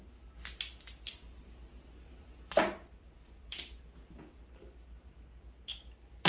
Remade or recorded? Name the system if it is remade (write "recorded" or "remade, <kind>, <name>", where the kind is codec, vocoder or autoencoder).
recorded